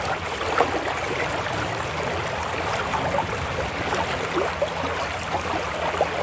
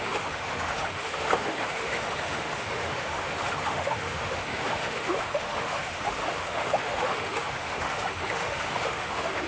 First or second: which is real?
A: first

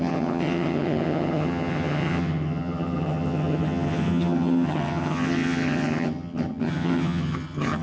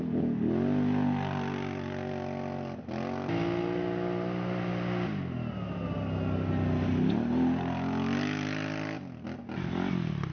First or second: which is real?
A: second